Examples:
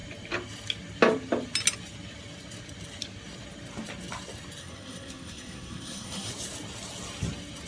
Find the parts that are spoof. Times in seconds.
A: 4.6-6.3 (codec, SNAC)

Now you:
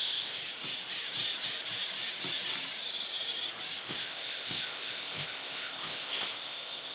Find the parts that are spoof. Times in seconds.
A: 0.0-0.4 (codec, ZipCodec); 3.8-6.9

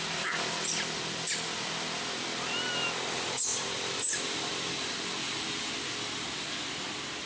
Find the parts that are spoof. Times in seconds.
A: none

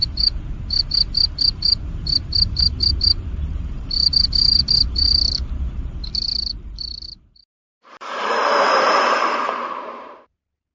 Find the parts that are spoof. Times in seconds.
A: 0.0-10.7 (vocoder, BigVGAN v2)